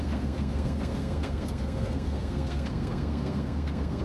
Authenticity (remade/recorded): remade